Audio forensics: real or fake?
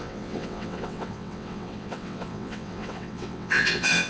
fake